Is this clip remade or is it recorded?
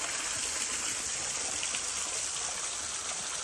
recorded